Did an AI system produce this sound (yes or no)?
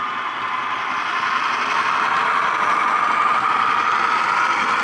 no